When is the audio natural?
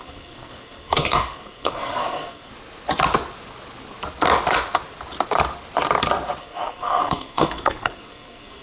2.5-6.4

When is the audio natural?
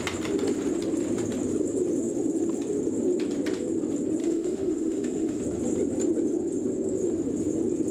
0.0-4.2; 5.4-7.9